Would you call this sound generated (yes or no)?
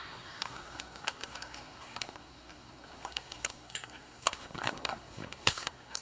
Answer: yes